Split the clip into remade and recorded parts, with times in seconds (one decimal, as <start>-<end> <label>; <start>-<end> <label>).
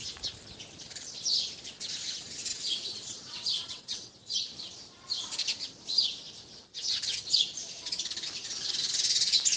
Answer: 0.0-2.5 recorded; 2.5-4.1 remade; 4.1-9.6 recorded